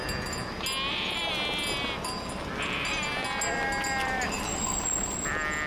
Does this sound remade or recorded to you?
recorded